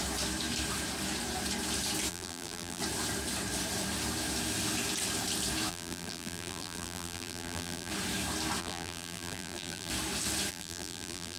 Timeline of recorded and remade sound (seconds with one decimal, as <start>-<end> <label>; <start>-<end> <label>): 0.0-2.1 recorded; 2.1-2.8 remade; 2.8-5.7 recorded; 5.7-7.9 remade; 7.9-8.6 recorded; 8.6-9.9 remade; 9.9-10.5 recorded; 10.5-11.4 remade